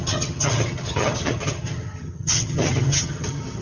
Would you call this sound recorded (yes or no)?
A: no